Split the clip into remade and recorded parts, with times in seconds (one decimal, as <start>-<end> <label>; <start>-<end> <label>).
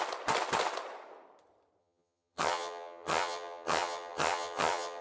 0.0-1.8 recorded; 1.8-5.0 remade